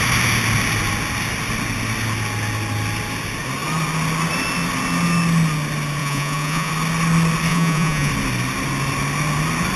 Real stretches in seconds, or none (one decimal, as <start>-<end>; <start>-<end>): 0.0-6.0; 6.7-7.5; 8.1-9.8